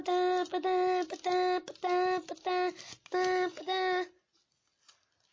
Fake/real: real